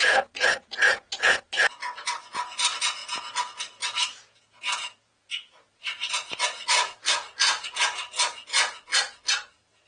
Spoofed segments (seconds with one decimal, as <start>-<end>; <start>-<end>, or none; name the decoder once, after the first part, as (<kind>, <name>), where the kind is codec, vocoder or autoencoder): 0.0-9.9 (vocoder, Vocos)